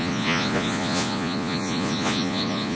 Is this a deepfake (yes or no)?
yes